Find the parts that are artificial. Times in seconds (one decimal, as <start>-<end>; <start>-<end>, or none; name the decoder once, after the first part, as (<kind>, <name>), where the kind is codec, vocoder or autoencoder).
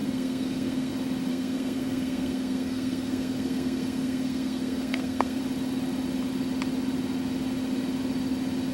0.0-0.9 (codec, SNAC); 1.3-5.4